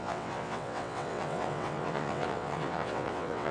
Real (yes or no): no